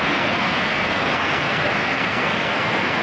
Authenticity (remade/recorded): remade